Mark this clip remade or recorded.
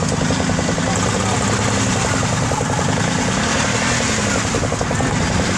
recorded